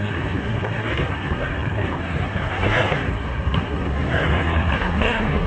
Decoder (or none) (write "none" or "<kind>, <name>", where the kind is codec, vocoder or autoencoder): codec, SNAC